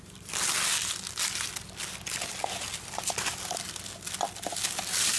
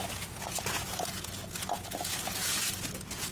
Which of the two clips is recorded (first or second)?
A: first